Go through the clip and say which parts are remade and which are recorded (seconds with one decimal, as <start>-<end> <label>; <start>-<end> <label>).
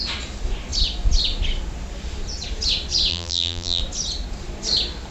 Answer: 0.0-3.1 recorded; 3.1-3.8 remade; 3.8-5.1 recorded